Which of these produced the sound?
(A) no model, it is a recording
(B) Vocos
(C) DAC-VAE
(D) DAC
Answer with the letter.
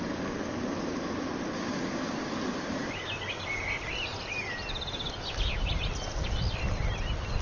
A